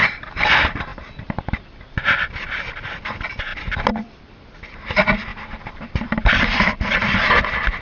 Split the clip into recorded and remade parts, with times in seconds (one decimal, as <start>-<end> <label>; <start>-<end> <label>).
0.0-0.5 remade; 0.5-0.9 recorded; 0.9-2.7 remade; 2.7-3.5 recorded; 3.5-4.2 remade; 4.2-5.3 recorded; 5.3-6.6 remade; 6.6-7.8 recorded